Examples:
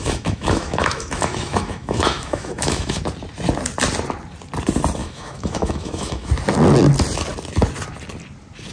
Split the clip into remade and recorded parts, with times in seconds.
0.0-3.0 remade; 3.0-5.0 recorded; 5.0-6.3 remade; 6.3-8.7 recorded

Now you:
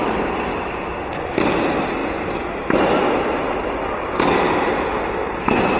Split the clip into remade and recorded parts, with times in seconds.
0.0-5.8 recorded